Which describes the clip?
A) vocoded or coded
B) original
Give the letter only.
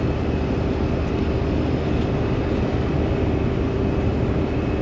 B